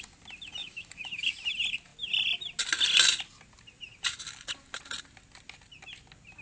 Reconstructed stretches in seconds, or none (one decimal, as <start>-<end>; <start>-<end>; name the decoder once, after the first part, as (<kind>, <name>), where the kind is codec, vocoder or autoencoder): 0.6-1.3 (autoencoder, DAC-VAE)